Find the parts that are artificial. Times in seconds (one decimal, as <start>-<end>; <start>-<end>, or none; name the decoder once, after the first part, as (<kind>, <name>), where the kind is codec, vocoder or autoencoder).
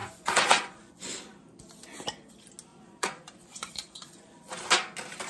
0.0-1.2 (vocoder, Vocos); 2.7-4.6